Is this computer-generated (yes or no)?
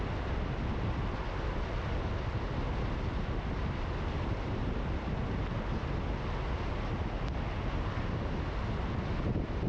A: no